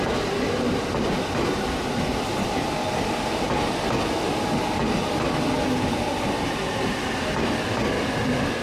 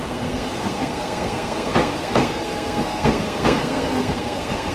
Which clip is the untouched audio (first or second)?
first